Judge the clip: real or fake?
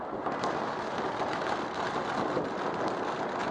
real